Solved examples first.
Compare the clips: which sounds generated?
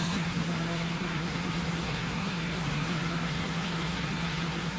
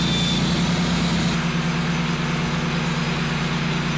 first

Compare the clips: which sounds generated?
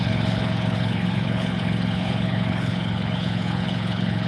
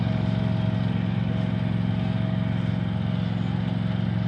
first